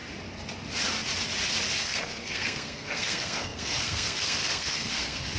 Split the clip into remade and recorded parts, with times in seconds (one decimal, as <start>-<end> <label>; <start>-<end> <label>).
0.0-1.8 recorded; 1.8-5.4 remade